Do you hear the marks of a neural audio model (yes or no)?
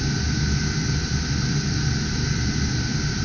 yes